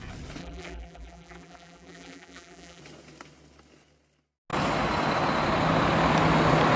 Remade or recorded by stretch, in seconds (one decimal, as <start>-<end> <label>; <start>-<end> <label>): 0.0-0.4 recorded; 0.4-2.8 remade; 2.8-6.8 recorded